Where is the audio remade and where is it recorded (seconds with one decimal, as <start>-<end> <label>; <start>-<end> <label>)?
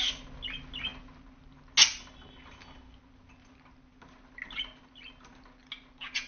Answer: 0.0-6.3 recorded